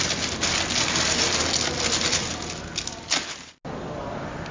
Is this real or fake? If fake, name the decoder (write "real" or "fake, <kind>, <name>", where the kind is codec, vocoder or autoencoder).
real